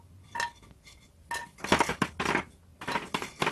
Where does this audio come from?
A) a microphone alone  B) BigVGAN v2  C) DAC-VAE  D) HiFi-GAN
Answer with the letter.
A